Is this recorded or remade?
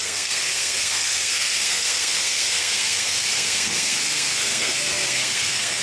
remade